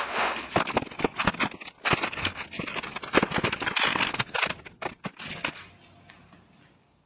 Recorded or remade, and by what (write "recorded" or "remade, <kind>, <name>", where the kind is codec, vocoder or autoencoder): recorded